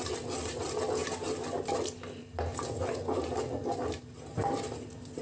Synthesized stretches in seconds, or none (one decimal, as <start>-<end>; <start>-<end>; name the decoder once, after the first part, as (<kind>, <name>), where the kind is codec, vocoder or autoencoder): none